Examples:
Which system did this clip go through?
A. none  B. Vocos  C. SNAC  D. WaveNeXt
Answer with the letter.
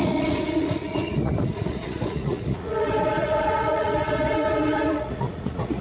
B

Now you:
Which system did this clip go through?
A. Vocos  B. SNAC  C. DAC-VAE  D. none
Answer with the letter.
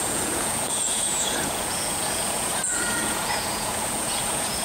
A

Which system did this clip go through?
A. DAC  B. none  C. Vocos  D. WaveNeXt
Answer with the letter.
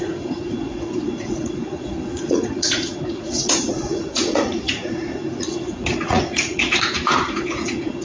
C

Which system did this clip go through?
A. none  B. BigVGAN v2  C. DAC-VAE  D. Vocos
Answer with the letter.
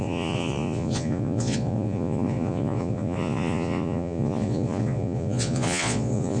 D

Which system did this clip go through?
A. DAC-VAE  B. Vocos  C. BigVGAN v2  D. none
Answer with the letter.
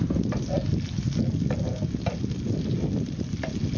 D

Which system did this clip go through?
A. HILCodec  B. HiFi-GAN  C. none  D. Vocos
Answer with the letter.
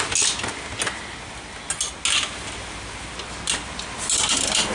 C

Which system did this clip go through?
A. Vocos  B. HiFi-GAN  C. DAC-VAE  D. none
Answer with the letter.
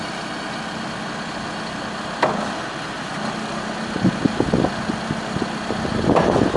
D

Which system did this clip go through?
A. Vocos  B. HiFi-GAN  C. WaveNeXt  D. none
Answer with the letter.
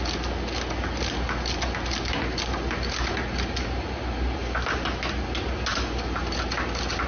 D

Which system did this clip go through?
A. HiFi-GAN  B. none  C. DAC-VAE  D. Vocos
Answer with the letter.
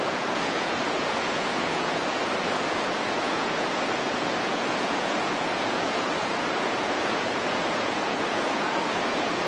D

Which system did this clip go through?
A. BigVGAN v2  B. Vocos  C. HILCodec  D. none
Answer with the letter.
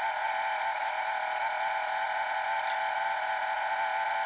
D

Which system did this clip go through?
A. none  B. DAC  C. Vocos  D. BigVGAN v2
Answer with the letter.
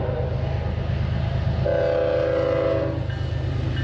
A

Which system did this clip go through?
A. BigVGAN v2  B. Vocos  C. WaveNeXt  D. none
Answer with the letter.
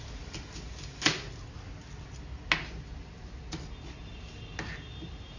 D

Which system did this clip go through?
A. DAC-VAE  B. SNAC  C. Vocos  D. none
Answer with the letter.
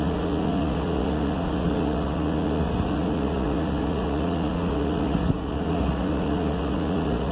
C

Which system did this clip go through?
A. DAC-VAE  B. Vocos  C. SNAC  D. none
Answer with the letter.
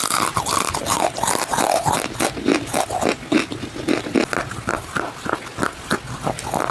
D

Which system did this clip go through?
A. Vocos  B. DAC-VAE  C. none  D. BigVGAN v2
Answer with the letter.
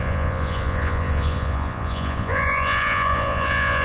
A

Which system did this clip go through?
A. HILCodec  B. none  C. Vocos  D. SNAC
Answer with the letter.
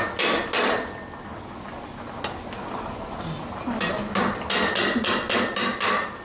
B